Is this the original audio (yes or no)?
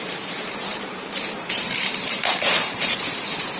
no